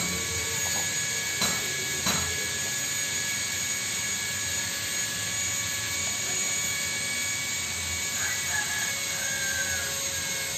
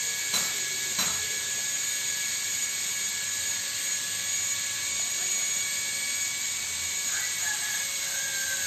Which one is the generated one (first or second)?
second